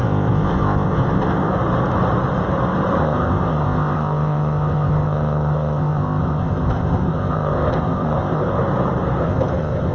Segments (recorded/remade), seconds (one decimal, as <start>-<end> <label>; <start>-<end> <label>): 0.0-1.5 remade; 1.5-3.0 recorded; 3.0-8.6 remade; 8.6-9.2 recorded; 9.2-9.9 remade